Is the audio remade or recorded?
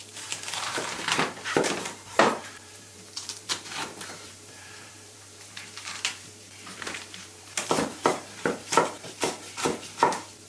remade